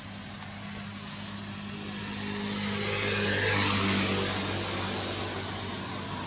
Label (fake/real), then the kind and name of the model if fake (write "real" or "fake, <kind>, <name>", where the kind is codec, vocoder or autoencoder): real